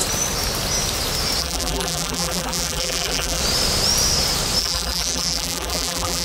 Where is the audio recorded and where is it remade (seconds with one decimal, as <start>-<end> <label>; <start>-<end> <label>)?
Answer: 0.0-1.4 recorded; 1.4-3.4 remade; 3.4-4.6 recorded; 4.6-6.2 remade